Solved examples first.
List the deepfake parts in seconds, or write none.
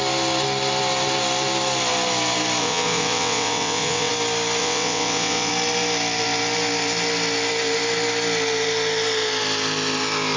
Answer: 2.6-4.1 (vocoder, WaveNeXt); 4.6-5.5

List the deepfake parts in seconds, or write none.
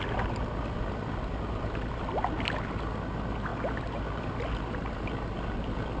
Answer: none